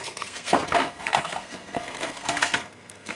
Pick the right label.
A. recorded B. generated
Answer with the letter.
B